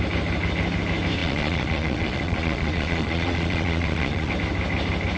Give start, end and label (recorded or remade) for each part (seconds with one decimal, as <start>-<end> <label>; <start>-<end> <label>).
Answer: 0.0-1.2 recorded; 1.2-4.3 remade; 4.3-5.2 recorded